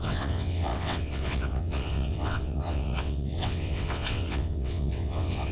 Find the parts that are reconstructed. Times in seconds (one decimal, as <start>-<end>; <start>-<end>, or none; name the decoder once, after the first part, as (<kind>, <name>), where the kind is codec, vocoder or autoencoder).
0.0-5.5 (vocoder, WaveNeXt)